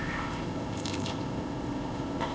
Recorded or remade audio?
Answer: remade